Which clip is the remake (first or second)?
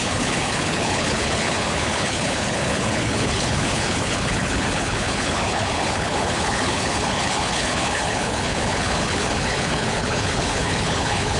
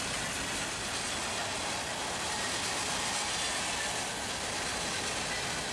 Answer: first